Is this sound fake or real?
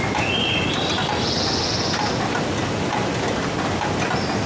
real